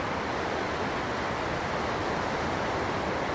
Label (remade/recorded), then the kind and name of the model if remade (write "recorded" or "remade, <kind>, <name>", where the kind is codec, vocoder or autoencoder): recorded